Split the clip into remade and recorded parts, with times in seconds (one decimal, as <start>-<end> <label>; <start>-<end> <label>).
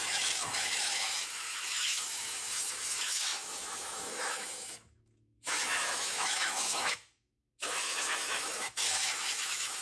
0.0-9.8 remade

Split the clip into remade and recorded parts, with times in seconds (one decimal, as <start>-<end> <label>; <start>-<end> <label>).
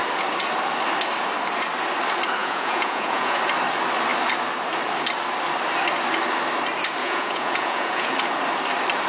0.0-2.4 recorded; 2.4-3.4 remade; 3.4-7.0 recorded; 7.0-8.1 remade; 8.1-9.1 recorded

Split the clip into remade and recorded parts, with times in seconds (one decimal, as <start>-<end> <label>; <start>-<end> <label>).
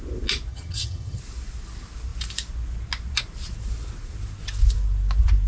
0.0-0.5 recorded; 0.5-1.2 remade; 1.2-5.5 recorded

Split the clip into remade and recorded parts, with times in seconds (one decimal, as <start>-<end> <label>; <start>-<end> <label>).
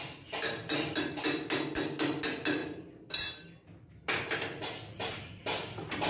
0.0-6.1 recorded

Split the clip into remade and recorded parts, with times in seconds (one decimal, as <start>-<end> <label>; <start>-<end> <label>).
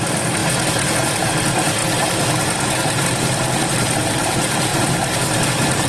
0.0-5.9 recorded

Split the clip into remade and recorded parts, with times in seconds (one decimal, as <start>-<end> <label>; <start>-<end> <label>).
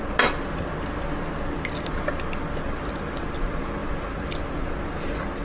0.0-5.4 recorded